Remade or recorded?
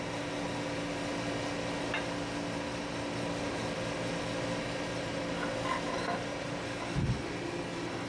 recorded